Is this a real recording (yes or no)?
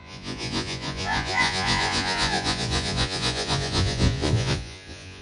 no